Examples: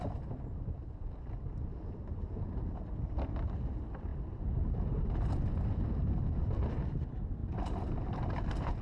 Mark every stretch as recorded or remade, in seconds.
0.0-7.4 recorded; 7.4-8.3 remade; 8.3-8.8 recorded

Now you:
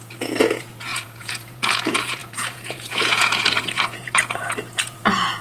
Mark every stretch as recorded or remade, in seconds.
0.0-5.4 remade